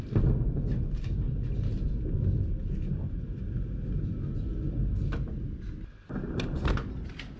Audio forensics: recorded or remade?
recorded